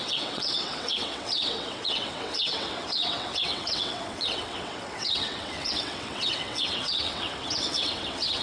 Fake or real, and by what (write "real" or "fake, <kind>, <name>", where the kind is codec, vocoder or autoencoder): fake, vocoder, WaveNeXt